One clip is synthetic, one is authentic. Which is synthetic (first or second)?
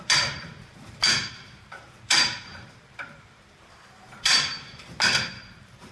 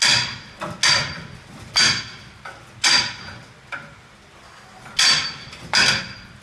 first